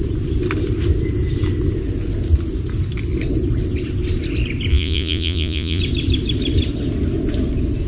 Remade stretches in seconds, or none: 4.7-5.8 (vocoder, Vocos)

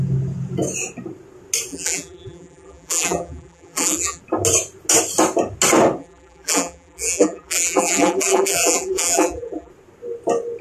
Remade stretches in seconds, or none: 1.7-4.2 (vocoder, BigVGAN v2); 6.0-9.7

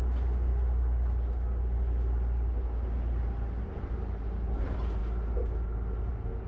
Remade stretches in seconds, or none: none

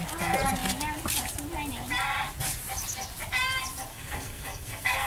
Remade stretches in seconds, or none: 3.9-5.1 (codec, SNAC)

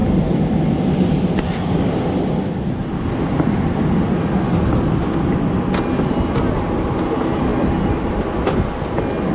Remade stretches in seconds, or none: none

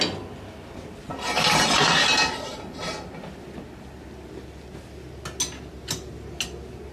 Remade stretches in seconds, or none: 1.1-2.8 (vocoder, BigVGAN v2)

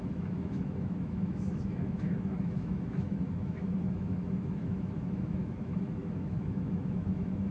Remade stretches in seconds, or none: 0.0-7.5 (autoencoder, DAC-VAE)